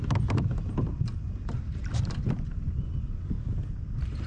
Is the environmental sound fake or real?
real